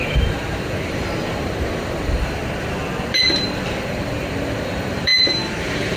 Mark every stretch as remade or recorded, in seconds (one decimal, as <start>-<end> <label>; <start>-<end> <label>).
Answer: 0.0-2.4 remade; 2.4-3.2 recorded; 3.2-5.1 remade; 5.1-5.6 recorded; 5.6-6.0 remade